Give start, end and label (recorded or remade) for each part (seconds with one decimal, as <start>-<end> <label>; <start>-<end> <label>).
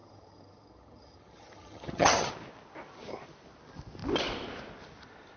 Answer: 0.0-2.3 remade; 2.3-5.4 recorded